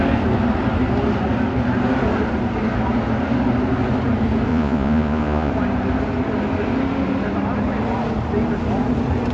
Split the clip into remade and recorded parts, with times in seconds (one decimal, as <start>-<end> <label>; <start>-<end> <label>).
0.0-4.5 recorded; 4.5-5.5 remade; 5.5-9.3 recorded